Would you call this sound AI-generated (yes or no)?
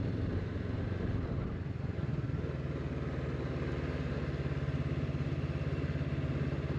no